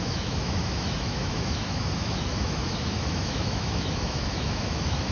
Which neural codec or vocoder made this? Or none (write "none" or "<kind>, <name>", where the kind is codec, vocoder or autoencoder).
autoencoder, DAC-VAE